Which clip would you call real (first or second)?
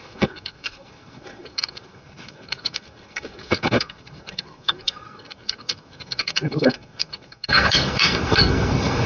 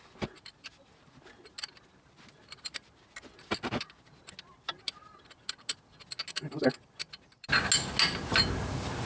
second